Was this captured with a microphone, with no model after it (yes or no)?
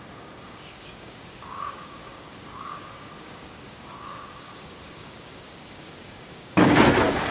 no